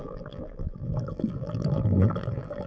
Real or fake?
fake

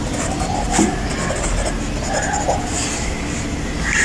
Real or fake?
real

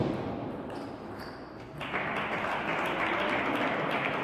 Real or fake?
real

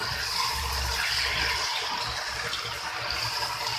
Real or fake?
fake